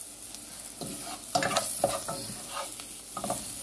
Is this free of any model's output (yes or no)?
yes